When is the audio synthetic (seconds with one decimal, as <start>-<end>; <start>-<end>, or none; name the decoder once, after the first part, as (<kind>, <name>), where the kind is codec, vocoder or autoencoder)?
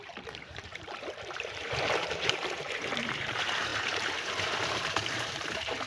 0.0-5.9 (vocoder, BigVGAN v2)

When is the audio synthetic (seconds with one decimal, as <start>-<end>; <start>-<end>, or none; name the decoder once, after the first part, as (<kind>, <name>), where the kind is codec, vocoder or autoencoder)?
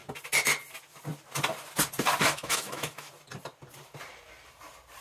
2.2-3.1 (autoencoder, DAC-VAE)